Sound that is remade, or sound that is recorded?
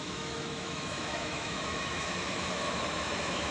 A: remade